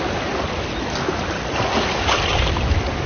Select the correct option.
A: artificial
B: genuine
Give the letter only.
B